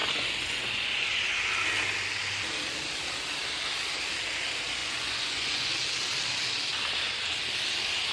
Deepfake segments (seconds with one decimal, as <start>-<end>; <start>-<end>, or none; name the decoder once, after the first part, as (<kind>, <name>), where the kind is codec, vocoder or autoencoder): 0.0-1.1 (vocoder, Vocos); 4.8-5.7